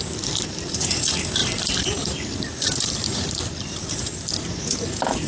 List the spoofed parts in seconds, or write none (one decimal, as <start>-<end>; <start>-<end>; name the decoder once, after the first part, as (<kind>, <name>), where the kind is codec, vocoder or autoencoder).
1.4-4.5 (vocoder, BigVGAN v2)